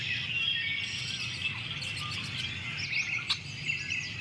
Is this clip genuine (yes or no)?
yes